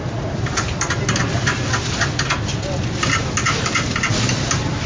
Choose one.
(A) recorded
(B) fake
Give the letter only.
A